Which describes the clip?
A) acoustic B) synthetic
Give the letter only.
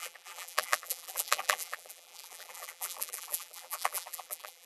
B